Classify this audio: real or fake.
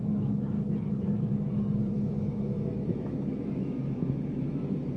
fake